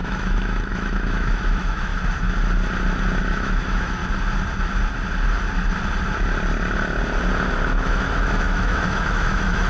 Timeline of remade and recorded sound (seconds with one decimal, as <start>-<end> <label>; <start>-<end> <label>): 0.0-1.9 remade; 1.9-3.2 recorded; 3.2-4.0 remade; 4.0-7.7 recorded; 7.7-9.7 remade